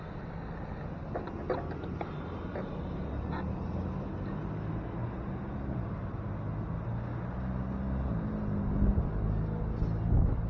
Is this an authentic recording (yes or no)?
yes